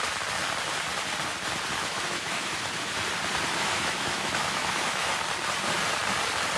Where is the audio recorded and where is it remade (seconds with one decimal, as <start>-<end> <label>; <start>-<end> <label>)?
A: 0.0-1.8 recorded; 1.8-2.9 remade; 2.9-3.5 recorded; 3.5-5.1 remade; 5.1-6.6 recorded